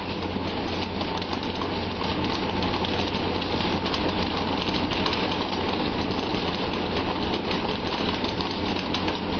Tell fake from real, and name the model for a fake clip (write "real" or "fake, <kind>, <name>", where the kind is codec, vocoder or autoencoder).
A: real